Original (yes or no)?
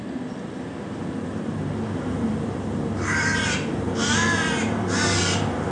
no